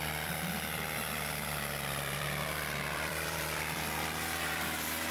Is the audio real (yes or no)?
no